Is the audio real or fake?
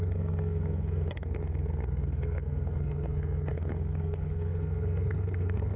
fake